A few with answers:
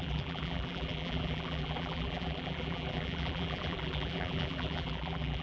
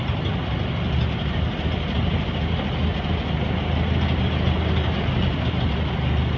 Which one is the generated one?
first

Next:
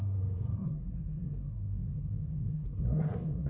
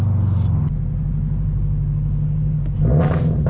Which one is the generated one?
first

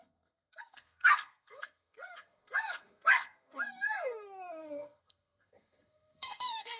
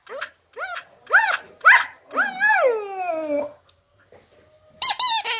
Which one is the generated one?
first